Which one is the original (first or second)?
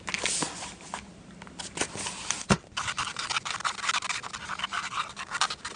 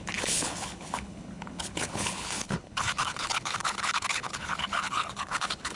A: first